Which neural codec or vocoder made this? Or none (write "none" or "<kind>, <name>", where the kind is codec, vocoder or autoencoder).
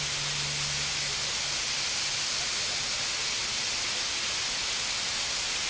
none